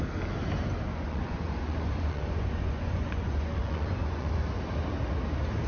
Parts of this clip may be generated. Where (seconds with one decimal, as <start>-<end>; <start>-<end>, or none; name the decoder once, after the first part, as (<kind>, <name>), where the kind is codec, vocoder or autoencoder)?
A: 0.9-4.3 (vocoder, Vocos)